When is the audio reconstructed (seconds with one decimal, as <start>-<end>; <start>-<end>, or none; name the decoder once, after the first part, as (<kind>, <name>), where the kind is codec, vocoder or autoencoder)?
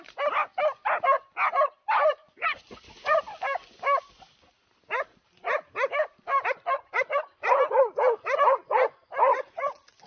2.1-3.2 (vocoder, Vocos); 9.3-10.1